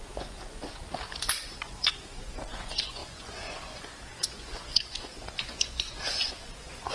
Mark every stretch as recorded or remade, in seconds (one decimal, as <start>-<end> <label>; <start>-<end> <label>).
0.0-0.8 remade; 0.8-1.4 recorded; 1.4-6.9 remade